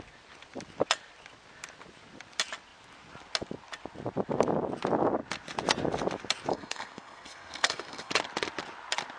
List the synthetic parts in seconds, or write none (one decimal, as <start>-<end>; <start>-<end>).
6.5-8.1